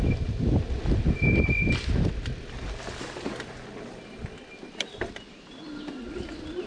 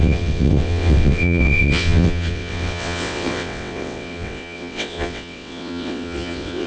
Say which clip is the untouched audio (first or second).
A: first